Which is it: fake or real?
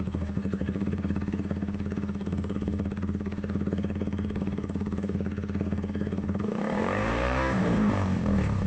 fake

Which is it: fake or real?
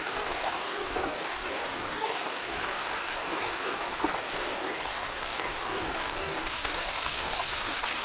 fake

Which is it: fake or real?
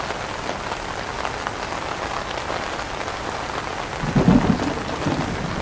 real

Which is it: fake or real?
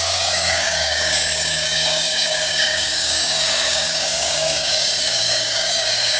fake